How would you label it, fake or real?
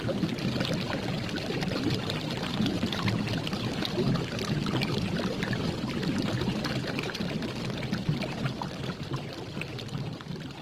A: real